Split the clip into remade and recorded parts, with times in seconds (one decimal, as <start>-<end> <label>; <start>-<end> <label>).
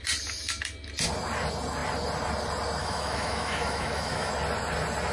0.0-2.8 recorded; 2.8-4.3 remade; 4.3-5.1 recorded